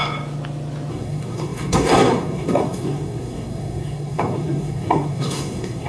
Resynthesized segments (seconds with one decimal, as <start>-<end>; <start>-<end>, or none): 0.9-5.9